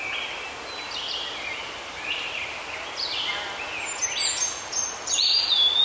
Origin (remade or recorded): recorded